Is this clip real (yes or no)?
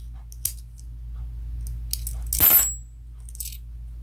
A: yes